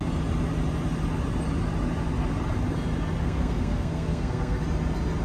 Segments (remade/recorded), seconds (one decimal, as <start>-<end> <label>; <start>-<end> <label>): 0.0-3.2 recorded; 3.2-4.6 remade; 4.6-5.2 recorded